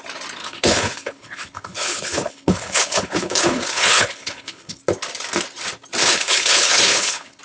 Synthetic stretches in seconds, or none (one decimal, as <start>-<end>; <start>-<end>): 0.4-4.8; 6.0-7.4